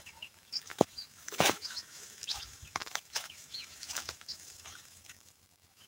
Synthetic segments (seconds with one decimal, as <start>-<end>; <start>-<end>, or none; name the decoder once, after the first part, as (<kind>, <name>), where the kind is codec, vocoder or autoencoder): 0.0-5.9 (autoencoder, DAC-VAE)